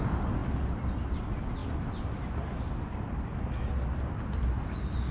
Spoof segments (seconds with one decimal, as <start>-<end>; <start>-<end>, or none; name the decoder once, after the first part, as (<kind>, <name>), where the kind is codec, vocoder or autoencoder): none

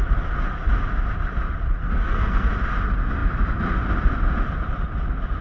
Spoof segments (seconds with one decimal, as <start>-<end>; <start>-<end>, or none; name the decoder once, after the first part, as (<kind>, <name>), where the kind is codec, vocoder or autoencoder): 1.8-2.5 (codec, SNAC)

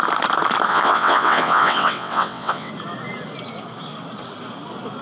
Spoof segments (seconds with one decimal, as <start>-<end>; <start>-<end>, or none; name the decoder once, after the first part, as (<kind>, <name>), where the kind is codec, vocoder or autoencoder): 0.7-2.7 (vocoder, WaveNeXt)